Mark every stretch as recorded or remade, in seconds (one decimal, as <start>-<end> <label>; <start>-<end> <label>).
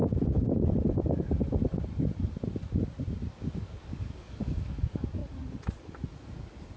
0.0-3.3 recorded; 3.3-5.2 remade; 5.2-6.1 recorded; 6.1-6.8 remade